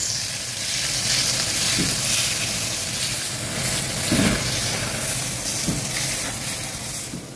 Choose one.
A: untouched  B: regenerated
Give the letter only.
A